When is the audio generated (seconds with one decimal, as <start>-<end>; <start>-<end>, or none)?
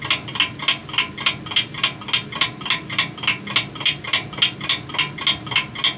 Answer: none